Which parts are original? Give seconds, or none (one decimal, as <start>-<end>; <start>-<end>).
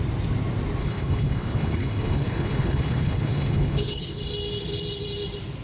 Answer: 0.0-0.8; 4.2-5.6